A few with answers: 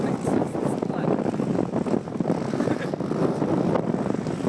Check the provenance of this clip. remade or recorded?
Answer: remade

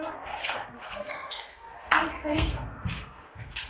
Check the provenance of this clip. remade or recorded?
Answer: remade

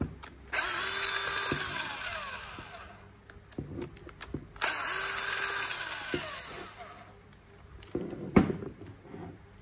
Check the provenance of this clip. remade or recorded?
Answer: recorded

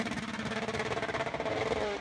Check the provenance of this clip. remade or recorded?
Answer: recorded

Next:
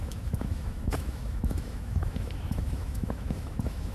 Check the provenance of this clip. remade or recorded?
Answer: remade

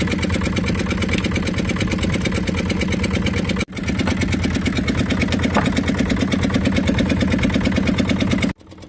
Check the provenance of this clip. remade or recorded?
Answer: recorded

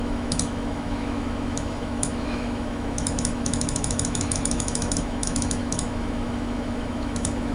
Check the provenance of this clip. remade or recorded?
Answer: remade